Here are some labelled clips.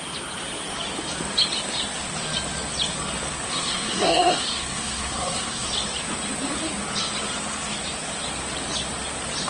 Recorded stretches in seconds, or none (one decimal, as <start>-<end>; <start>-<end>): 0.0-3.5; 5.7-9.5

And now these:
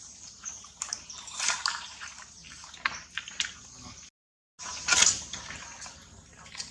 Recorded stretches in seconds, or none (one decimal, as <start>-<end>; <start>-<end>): 0.0-6.7

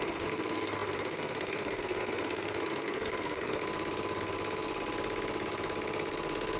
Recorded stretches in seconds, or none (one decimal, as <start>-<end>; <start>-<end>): 3.6-6.6

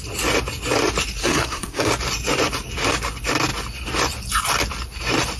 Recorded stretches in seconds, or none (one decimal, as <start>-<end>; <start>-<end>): 0.0-1.2; 1.9-5.4

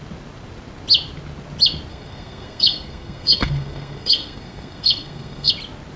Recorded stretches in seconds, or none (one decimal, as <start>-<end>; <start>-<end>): 0.0-1.9; 5.5-6.0

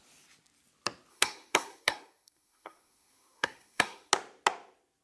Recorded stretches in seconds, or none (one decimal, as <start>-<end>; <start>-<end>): 0.0-1.1; 4.1-5.0